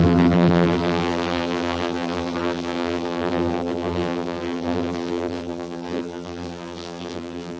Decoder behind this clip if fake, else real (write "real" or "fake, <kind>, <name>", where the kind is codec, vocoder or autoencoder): fake, vocoder, BigVGAN v2